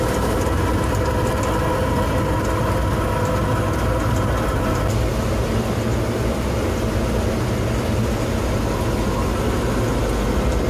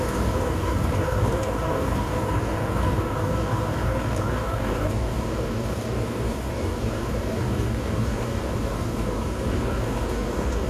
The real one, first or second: first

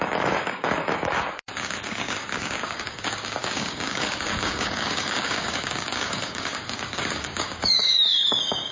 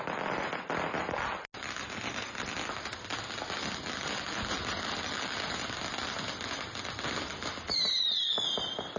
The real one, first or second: second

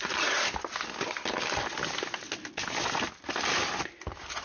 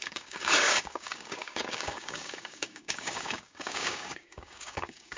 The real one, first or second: first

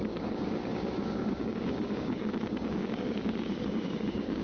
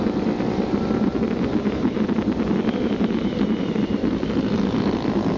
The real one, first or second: second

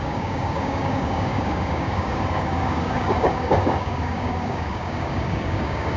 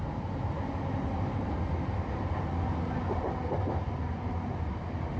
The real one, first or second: second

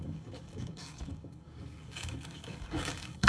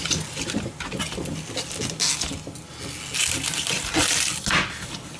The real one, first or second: second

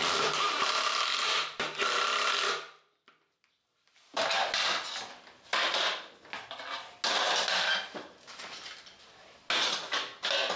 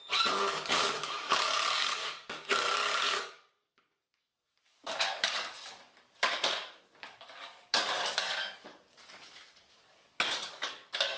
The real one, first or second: first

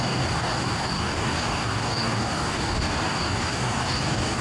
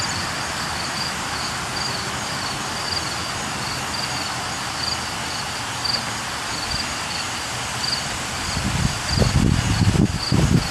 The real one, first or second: second